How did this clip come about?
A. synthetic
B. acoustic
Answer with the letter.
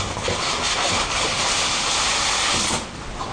B